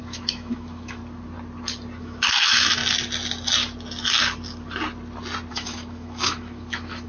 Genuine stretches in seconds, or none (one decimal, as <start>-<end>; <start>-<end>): 1.0-2.0; 2.8-5.5